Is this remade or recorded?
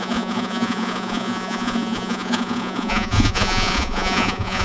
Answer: remade